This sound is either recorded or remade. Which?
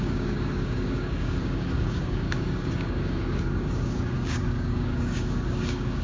remade